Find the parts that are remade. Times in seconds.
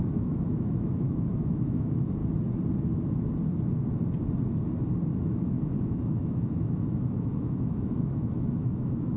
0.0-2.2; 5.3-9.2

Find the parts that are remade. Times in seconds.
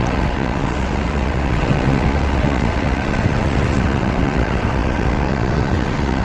0.0-6.2